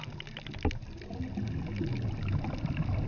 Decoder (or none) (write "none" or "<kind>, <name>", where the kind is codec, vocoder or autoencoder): none